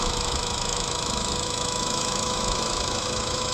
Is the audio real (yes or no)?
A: no